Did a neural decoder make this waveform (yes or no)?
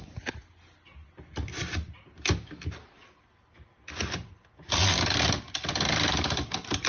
no